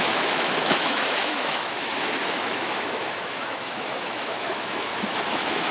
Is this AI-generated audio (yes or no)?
yes